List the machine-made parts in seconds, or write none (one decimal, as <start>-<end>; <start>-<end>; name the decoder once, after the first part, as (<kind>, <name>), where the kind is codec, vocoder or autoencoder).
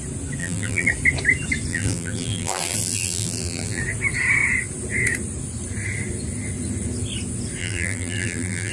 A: 0.4-0.9 (vocoder, BigVGAN v2); 1.7-3.8; 7.6-8.7